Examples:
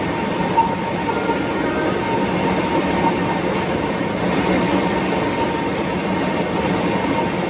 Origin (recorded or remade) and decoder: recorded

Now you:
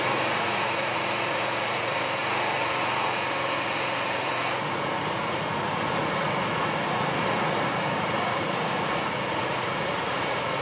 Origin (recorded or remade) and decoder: remade, vocoder, Vocos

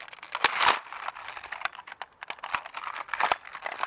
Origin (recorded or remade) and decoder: recorded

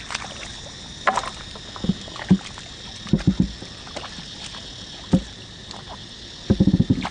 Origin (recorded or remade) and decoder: recorded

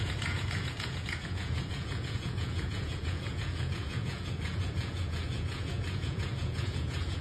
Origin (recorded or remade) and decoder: remade, vocoder, Vocos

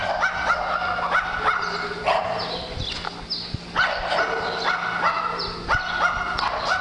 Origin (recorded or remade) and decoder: recorded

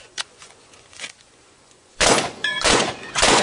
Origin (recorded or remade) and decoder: remade, vocoder, Vocos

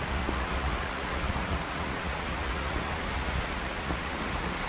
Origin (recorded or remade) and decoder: remade, vocoder, Vocos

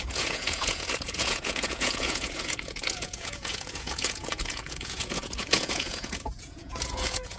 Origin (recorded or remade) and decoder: remade, vocoder, Vocos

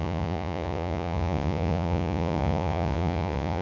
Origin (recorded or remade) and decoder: remade, vocoder, Vocos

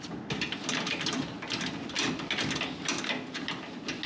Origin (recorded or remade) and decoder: recorded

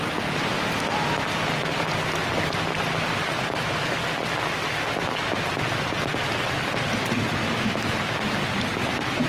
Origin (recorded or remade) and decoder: recorded